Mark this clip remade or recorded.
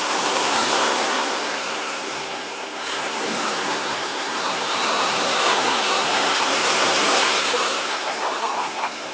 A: remade